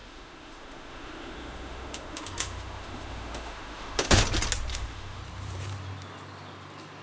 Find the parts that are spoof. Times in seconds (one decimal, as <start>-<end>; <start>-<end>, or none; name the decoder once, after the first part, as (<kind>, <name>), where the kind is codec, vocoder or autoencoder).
0.0-4.2 (autoencoder, DAC-VAE); 4.7-5.2

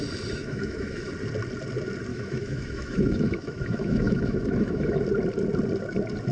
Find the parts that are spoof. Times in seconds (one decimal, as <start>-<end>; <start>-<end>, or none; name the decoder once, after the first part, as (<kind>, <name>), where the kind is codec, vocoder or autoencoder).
0.4-1.1 (autoencoder, DAC-VAE); 2.1-5.0

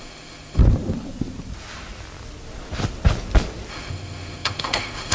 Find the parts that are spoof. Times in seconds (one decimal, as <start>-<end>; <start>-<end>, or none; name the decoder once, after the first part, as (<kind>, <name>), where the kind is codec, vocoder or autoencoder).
0.0-0.6 (autoencoder, DAC-VAE); 3.7-5.1